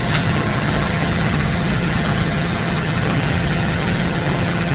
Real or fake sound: fake